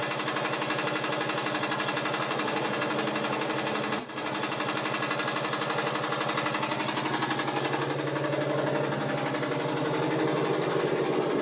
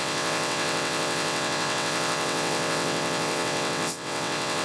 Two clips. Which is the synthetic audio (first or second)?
second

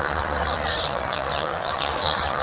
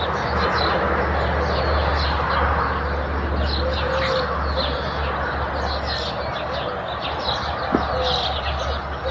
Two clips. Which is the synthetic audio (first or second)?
first